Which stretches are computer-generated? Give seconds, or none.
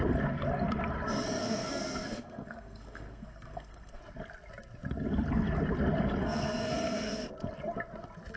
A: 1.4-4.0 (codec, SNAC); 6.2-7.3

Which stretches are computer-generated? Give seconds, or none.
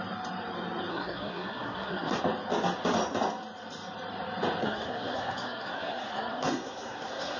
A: 0.9-2.2 (codec, SNAC); 4.6-7.4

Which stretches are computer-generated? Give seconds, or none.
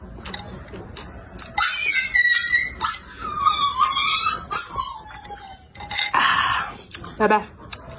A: none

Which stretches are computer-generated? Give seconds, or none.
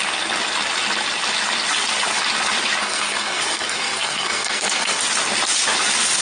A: 2.8-5.0 (codec, SNAC)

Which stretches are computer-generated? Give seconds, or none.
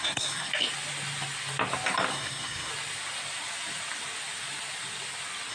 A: 0.0-0.5 (codec, SNAC); 2.1-2.7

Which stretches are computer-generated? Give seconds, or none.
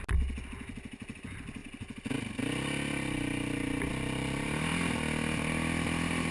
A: none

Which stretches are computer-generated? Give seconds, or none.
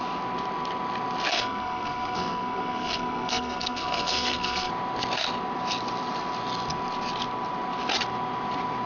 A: 1.3-4.7 (codec, SNAC)